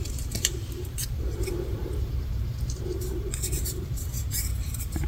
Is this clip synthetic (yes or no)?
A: yes